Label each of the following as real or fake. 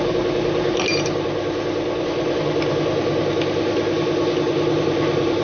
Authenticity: real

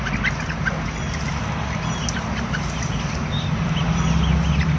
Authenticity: real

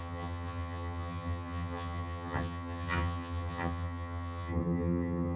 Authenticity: fake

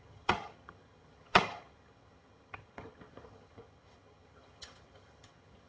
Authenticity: fake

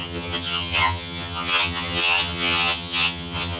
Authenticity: fake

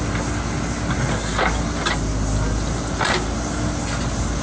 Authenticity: real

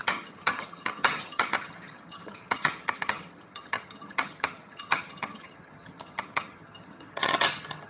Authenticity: fake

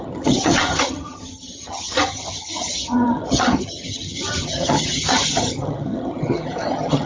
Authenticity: fake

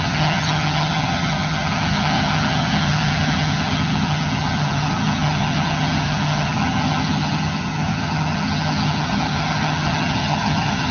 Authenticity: fake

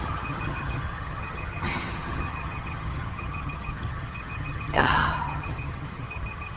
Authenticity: fake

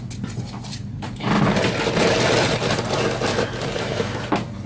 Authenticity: real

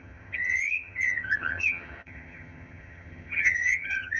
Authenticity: fake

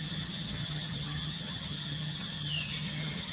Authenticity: fake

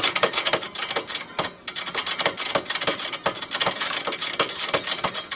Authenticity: real